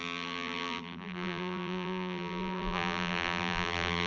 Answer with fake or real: fake